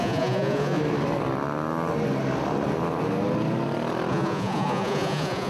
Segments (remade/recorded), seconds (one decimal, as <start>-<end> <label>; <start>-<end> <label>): 0.0-0.8 remade; 0.8-4.1 recorded; 4.1-5.5 remade